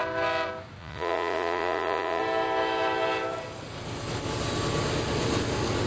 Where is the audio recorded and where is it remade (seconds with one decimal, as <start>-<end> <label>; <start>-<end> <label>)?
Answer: 0.0-0.8 recorded; 0.8-2.2 remade; 2.2-5.9 recorded